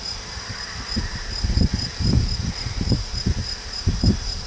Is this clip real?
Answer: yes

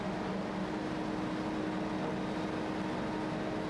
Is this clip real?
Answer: yes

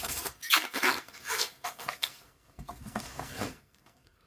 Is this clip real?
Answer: no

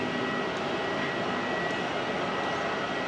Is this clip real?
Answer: yes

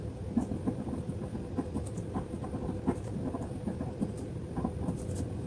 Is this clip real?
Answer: yes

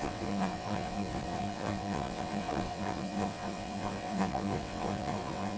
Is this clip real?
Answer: no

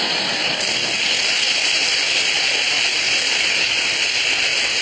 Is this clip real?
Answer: yes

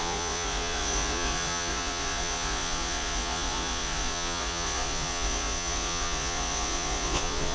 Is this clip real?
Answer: no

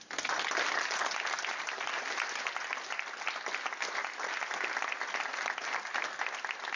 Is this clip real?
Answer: yes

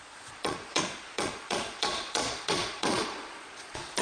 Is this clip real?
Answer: no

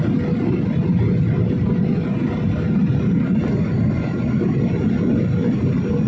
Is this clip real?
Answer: yes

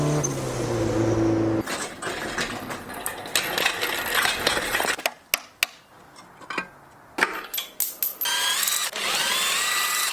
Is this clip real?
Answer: yes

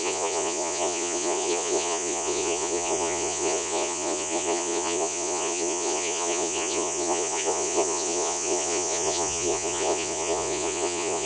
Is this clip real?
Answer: no